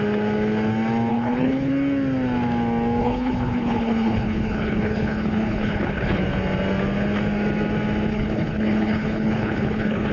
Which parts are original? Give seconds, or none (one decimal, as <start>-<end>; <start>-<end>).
0.0-1.1; 1.7-3.0; 6.2-8.1